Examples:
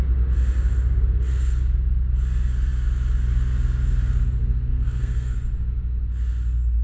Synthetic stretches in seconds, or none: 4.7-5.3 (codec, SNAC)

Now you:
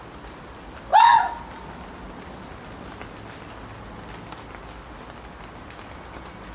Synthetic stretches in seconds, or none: none

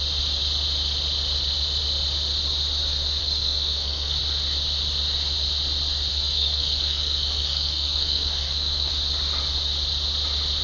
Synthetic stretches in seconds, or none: 3.2-4.2 (codec, SNAC); 6.1-8.9

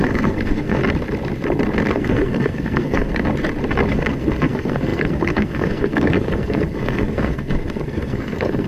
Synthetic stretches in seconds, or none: 0.0-0.8 (codec, SNAC); 1.9-3.3; 3.9-8.7

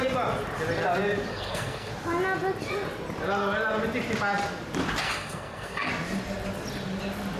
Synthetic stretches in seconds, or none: 1.3-1.9 (codec, SNAC); 5.0-5.9

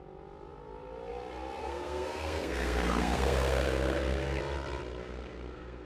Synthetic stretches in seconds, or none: 1.6-4.4 (codec, SNAC); 5.0-5.9

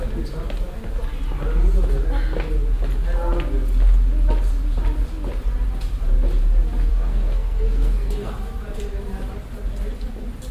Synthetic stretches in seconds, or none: 6.9-8.3 (codec, SNAC)